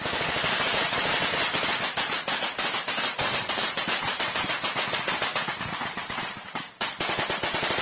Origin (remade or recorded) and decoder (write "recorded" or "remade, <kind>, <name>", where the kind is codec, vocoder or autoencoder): remade, vocoder, BigVGAN v2